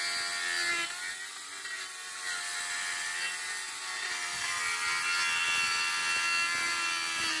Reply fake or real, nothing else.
real